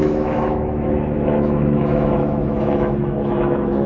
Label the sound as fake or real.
fake